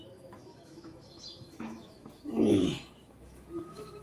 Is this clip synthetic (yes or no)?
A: yes